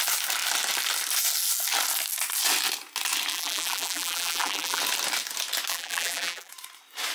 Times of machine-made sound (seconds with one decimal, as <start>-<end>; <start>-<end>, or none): 3.3-4.8; 5.7-6.5